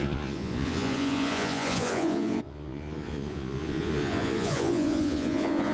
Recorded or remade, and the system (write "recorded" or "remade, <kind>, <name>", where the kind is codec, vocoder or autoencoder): remade, vocoder, Vocos